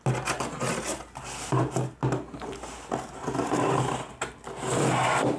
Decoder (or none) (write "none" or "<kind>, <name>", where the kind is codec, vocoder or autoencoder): none